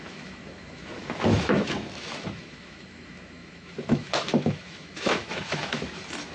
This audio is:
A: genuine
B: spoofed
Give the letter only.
B